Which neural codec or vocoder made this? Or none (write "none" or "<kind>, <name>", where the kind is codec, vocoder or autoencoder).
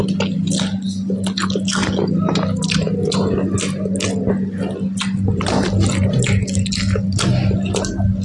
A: none